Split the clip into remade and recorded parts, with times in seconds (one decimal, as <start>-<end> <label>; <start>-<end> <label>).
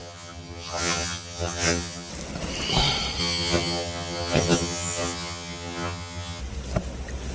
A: 0.0-2.1 remade; 2.1-3.2 recorded; 3.2-6.4 remade; 6.4-7.3 recorded